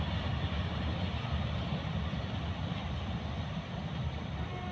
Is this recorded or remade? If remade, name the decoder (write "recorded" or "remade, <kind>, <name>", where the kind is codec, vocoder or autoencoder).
recorded